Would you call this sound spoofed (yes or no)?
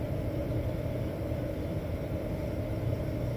yes